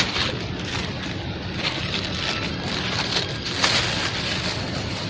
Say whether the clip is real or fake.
real